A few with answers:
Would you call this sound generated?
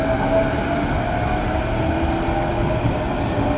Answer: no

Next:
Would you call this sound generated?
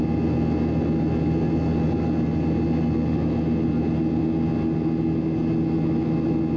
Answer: no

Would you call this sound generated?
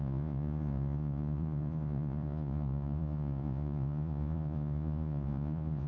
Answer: yes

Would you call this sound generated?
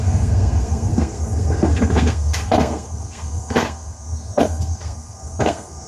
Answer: yes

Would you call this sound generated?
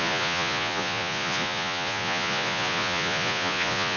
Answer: yes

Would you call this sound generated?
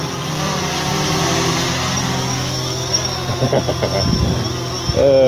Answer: no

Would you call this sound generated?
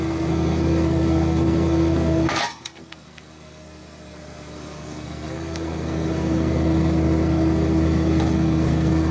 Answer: yes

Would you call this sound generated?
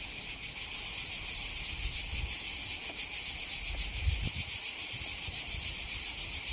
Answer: no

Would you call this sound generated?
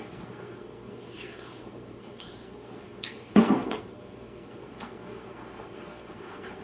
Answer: yes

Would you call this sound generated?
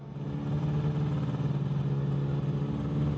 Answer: no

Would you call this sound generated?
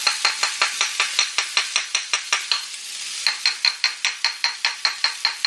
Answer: no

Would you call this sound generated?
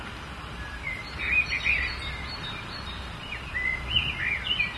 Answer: no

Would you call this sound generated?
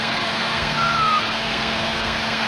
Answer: yes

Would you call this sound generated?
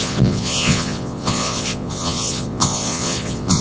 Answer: yes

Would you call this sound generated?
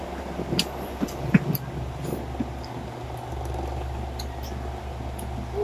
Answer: no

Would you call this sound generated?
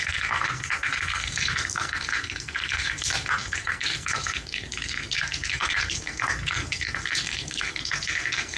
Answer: yes